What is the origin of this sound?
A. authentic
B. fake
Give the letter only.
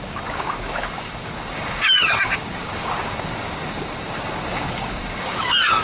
B